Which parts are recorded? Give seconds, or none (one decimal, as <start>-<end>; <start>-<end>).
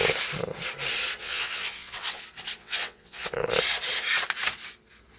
0.0-1.2; 2.2-2.6; 3.5-5.2